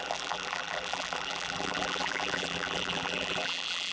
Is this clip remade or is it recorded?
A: remade